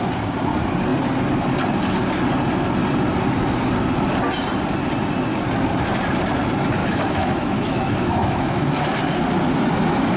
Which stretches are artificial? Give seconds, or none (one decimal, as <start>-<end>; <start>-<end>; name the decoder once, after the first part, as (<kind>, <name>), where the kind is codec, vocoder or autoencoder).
6.8-8.6 (autoencoder, DAC-VAE)